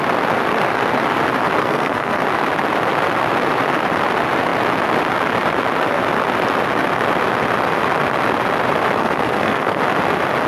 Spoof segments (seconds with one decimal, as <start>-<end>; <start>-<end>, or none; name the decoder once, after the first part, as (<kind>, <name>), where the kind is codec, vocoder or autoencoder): 1.6-2.2 (codec, SNAC); 9.0-9.8